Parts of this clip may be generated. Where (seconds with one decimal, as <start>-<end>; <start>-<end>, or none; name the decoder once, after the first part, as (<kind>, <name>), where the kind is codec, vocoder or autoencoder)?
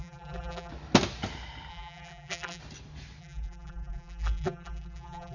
0.0-0.7 (vocoder, BigVGAN v2); 1.7-2.6; 3.2-5.3